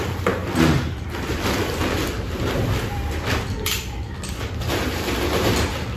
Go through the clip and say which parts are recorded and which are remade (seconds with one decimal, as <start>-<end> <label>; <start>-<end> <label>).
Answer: 0.0-6.0 recorded